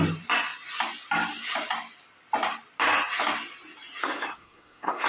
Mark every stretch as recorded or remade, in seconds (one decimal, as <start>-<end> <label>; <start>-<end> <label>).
0.0-4.0 recorded; 4.0-5.1 remade